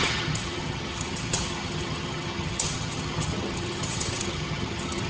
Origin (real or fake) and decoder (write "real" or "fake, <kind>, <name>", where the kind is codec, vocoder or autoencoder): fake, vocoder, HiFi-GAN